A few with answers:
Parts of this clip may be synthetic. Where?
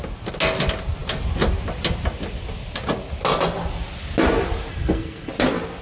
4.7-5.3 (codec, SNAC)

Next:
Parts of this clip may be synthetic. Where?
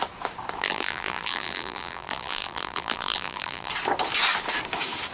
0.6-3.7 (vocoder, BigVGAN v2)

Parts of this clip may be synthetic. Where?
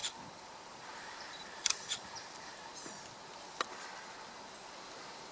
0.6-2.5 (vocoder, BigVGAN v2)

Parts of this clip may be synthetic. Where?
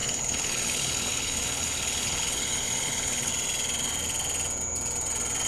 0.0-3.3 (codec, HILCodec)